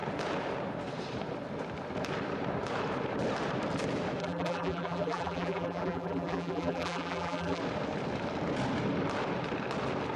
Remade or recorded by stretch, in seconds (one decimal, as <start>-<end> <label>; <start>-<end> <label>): 0.0-4.2 recorded; 4.2-7.6 remade; 7.6-10.2 recorded